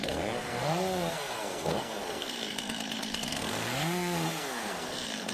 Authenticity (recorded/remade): remade